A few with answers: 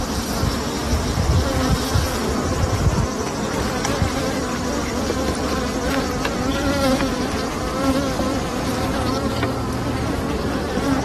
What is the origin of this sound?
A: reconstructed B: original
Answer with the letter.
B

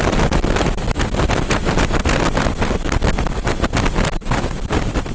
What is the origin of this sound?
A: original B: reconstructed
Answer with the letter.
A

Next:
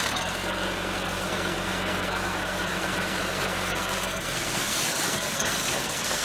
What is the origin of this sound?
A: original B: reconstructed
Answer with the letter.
B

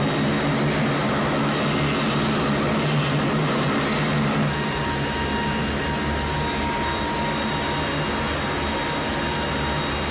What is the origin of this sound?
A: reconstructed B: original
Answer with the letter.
B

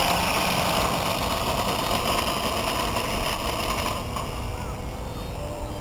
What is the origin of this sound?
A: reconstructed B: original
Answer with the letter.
B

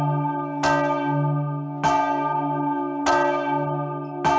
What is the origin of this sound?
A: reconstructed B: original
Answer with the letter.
B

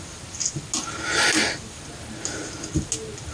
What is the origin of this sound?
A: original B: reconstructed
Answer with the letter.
A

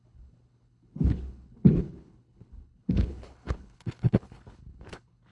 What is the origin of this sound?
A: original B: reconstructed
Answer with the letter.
B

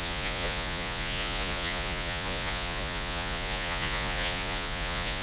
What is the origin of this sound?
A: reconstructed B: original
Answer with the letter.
A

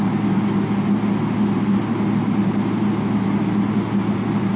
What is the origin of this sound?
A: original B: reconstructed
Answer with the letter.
A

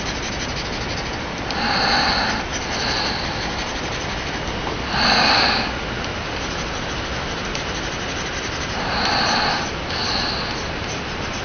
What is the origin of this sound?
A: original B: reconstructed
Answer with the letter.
A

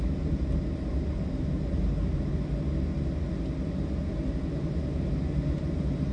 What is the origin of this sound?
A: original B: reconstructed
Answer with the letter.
A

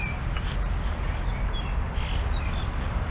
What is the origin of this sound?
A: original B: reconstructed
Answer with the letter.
A